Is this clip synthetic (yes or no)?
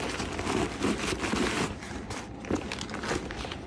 no